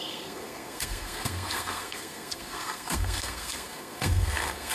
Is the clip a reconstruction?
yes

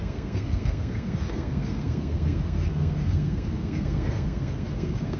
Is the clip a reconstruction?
yes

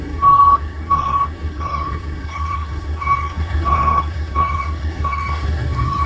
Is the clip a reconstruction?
yes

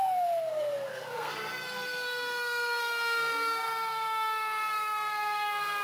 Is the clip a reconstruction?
yes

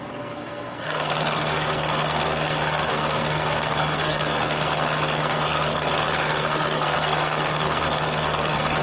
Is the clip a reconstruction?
yes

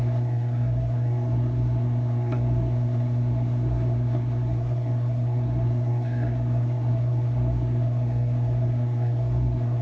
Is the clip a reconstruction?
yes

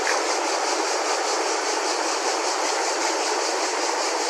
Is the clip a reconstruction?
no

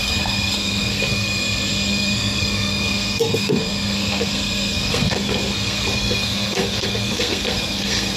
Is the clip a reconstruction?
yes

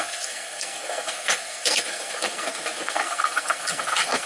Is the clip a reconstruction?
yes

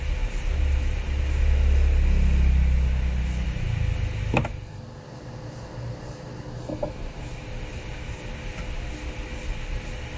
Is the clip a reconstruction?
no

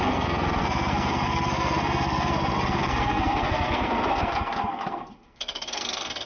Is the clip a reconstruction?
yes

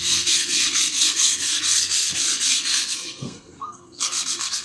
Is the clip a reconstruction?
yes